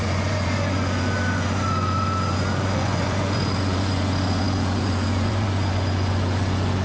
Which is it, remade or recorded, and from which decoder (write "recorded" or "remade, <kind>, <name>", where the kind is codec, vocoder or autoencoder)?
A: remade, vocoder, Vocos